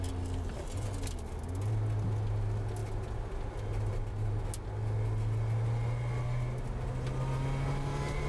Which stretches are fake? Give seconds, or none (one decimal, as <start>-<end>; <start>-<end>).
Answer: none